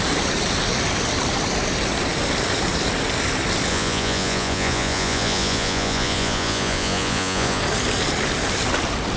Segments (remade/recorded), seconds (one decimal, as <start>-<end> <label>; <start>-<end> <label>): 0.0-3.7 recorded; 3.7-7.6 remade; 7.6-9.2 recorded